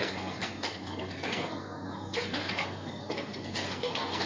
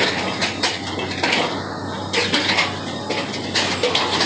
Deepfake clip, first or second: first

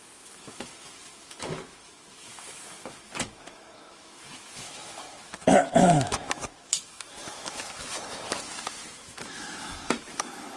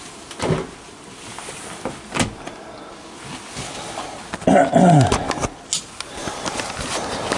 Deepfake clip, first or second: first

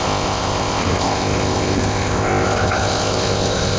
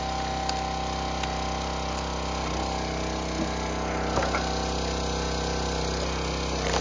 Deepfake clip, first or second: first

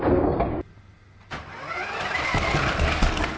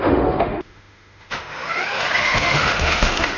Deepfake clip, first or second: second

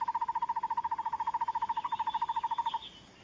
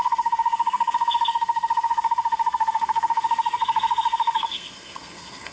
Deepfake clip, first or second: second